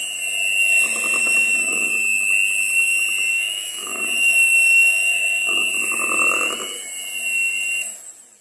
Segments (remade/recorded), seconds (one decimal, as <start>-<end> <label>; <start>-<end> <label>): 0.0-1.2 recorded; 1.2-1.9 remade; 1.9-3.3 recorded; 3.3-5.7 remade; 5.7-8.4 recorded